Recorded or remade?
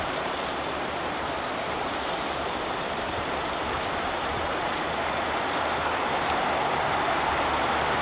remade